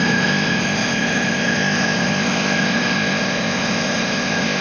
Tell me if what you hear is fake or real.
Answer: fake